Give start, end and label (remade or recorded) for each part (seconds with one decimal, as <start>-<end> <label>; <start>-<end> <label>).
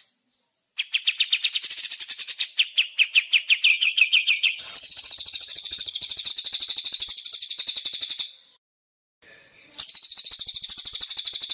0.0-3.7 recorded; 3.7-6.3 remade; 6.3-11.5 recorded